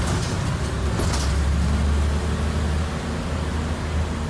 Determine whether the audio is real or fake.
real